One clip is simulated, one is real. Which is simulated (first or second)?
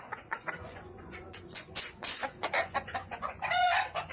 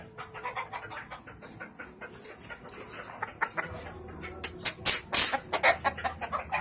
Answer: first